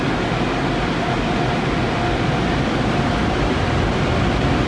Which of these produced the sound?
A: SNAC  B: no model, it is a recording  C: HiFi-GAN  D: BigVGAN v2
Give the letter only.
B